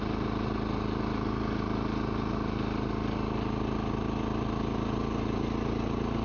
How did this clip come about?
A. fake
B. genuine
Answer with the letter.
B